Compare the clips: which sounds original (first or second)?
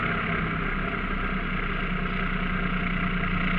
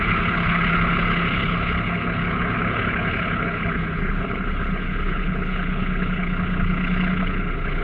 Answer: first